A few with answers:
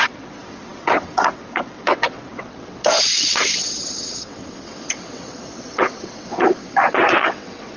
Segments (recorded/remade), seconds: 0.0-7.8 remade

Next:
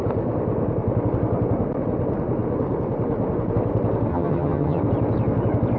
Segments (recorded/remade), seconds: 0.0-4.1 recorded; 4.1-4.8 remade; 4.8-5.8 recorded

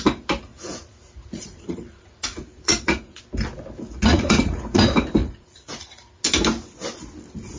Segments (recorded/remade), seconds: 0.0-0.5 recorded; 0.5-3.2 remade; 3.2-4.1 recorded; 4.1-4.8 remade; 4.8-5.2 recorded; 5.2-6.2 remade; 6.2-7.6 recorded

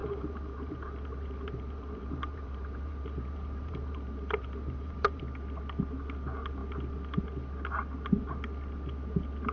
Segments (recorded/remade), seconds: 0.0-5.2 remade; 5.2-9.5 recorded

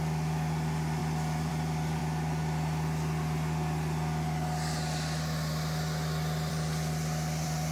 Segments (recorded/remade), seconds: 0.0-2.0 remade; 2.0-6.5 recorded; 6.5-7.7 remade

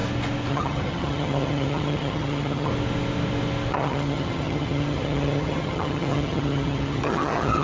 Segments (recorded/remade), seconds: 0.0-0.5 recorded; 0.5-2.7 remade; 2.7-3.7 recorded; 3.7-7.6 remade

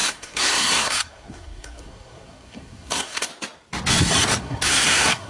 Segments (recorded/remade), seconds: 0.0-3.3 remade; 3.3-4.4 recorded; 4.4-5.3 remade

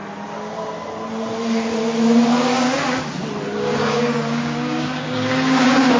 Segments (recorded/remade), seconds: 0.0-3.6 recorded; 3.6-6.0 remade